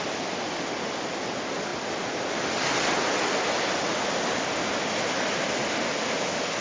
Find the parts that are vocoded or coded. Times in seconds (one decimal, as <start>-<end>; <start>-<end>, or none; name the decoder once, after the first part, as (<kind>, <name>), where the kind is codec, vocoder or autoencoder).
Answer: none